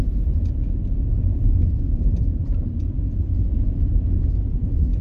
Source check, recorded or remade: remade